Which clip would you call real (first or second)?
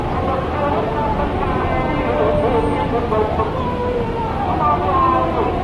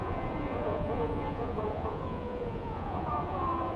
first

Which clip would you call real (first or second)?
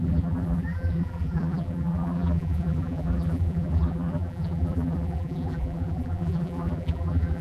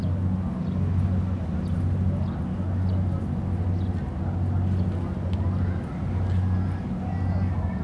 second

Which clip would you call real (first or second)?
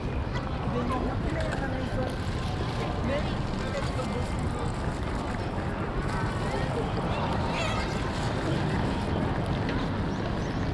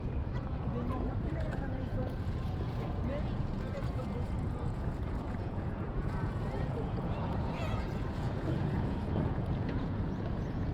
first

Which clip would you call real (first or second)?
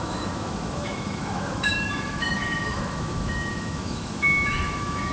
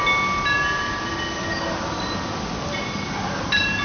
second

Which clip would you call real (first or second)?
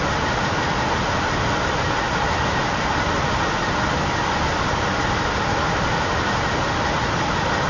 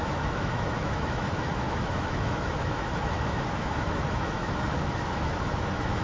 first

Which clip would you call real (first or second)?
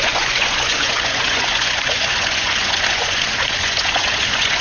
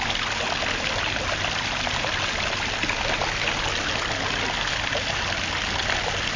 second